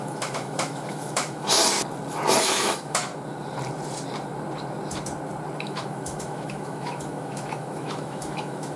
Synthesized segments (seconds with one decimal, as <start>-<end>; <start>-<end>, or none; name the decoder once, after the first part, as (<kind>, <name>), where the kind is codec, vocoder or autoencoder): 0.0-1.6 (autoencoder, DAC-VAE); 2.4-3.1; 5.6-8.8